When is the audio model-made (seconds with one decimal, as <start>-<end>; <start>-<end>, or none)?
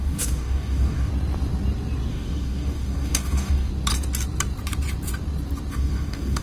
0.0-1.1; 2.1-3.7; 5.7-6.4